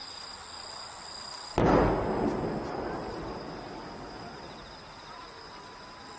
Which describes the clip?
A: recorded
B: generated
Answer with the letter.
A